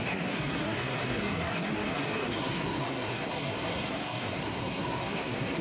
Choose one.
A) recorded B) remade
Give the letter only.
B